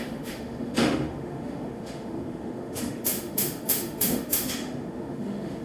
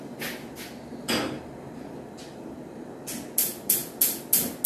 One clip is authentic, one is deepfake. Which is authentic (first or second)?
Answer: second